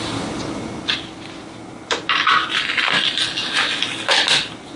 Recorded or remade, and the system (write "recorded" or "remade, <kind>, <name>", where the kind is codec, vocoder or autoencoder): recorded